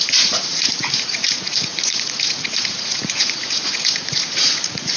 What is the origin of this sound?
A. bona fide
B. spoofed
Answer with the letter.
B